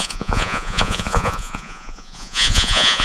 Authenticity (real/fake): fake